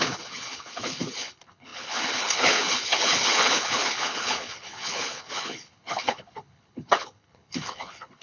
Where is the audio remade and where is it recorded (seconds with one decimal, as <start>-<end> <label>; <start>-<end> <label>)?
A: 0.0-8.2 remade